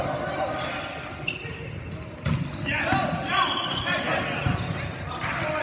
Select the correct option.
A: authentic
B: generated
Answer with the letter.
A